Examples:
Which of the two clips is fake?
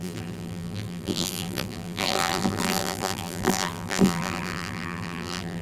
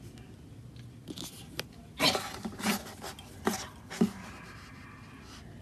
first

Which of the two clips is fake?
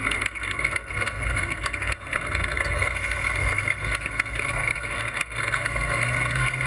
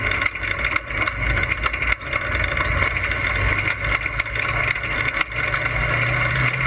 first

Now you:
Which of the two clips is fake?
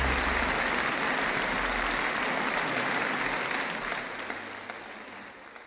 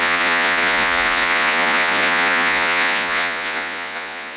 second